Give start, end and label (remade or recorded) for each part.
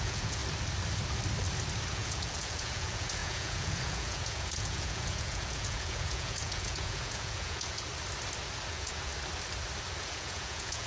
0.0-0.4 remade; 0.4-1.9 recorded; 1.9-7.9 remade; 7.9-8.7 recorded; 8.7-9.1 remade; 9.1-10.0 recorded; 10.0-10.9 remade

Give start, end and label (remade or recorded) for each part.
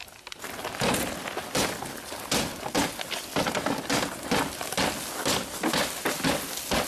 0.0-6.9 recorded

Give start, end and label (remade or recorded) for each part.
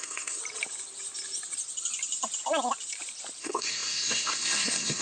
0.0-0.4 remade; 0.4-3.4 recorded; 3.4-5.0 remade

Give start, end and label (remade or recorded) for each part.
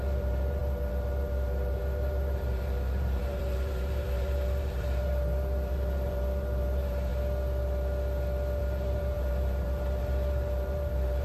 0.0-7.1 remade; 7.1-8.6 recorded; 8.6-11.2 remade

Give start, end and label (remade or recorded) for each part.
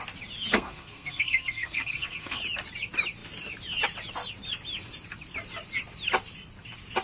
0.0-0.5 recorded; 0.5-2.4 remade; 2.4-7.0 recorded